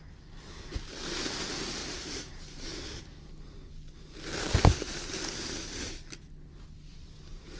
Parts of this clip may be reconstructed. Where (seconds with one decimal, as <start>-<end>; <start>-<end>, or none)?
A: 1.8-3.0